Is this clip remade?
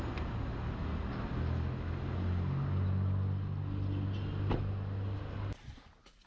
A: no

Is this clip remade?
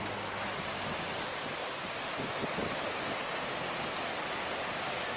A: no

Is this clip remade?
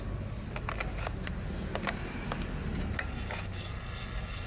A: no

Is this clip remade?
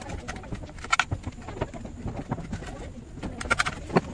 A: no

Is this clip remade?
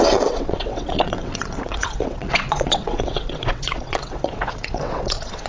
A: yes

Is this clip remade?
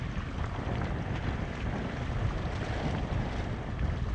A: no